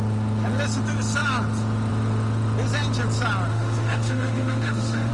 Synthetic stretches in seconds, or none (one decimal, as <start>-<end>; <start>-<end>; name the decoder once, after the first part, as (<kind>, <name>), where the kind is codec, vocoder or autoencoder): 3.5-5.1 (autoencoder, DAC-VAE)